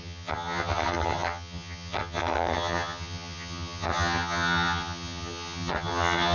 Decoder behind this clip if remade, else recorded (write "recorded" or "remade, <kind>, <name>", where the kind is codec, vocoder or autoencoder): remade, vocoder, HiFi-GAN